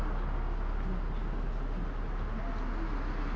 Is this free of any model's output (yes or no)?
yes